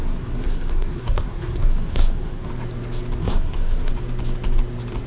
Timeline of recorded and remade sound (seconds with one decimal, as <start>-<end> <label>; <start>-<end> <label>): 0.0-2.5 remade; 2.5-3.2 recorded; 3.2-3.9 remade; 3.9-5.1 recorded